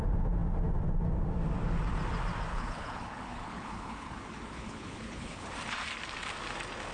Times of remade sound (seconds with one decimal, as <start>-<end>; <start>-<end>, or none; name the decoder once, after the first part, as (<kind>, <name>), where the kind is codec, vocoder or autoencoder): 2.5-5.5 (codec, HILCodec)